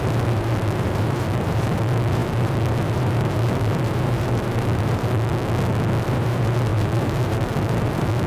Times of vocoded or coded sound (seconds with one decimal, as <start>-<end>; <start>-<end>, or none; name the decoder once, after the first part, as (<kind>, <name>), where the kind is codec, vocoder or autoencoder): 0.0-5.3 (vocoder, BigVGAN v2); 6.0-8.3